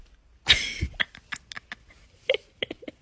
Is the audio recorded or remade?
recorded